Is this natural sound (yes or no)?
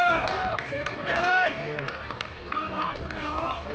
no